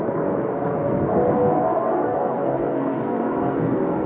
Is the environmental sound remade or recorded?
remade